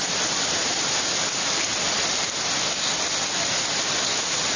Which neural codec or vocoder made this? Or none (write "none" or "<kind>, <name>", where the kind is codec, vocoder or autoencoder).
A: none